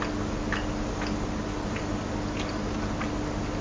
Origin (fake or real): real